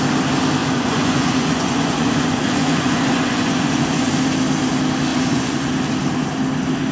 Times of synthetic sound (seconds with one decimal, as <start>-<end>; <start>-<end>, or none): 0.6-4.1; 5.1-5.7